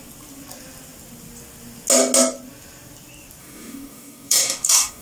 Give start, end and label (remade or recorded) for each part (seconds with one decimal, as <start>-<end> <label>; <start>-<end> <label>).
0.0-3.4 recorded; 3.4-5.0 remade